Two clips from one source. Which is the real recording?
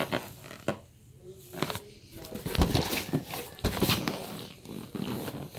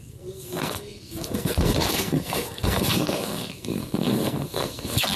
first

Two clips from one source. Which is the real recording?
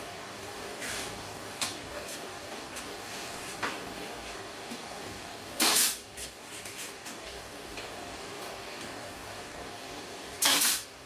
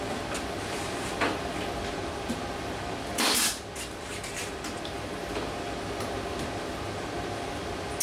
second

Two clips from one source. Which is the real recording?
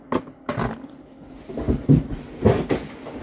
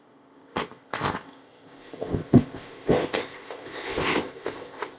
first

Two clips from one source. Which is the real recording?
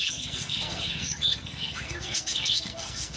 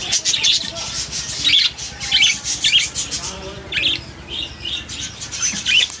second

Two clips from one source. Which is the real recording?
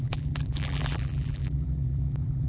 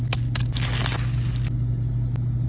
second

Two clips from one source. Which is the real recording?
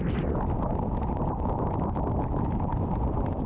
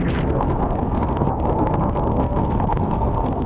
first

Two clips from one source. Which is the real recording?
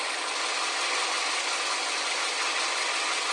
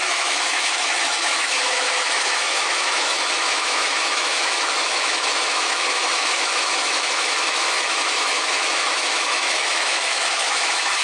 first